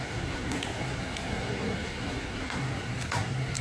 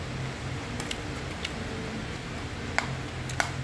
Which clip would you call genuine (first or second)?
second